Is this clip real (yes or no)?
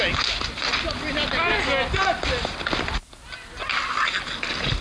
yes